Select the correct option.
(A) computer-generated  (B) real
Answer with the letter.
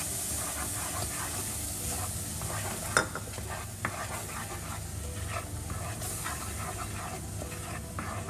B